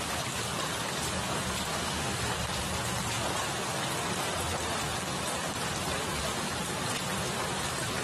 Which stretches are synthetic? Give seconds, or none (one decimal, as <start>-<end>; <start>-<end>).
1.7-2.2